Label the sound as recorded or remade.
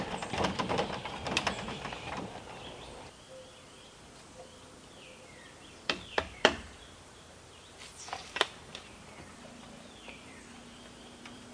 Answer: remade